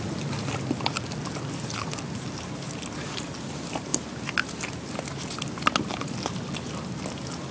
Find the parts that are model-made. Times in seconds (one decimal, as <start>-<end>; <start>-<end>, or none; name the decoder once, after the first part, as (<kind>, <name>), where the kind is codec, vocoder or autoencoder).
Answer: none